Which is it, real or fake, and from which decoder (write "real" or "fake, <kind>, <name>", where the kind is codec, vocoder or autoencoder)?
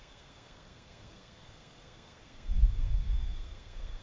fake, codec, SNAC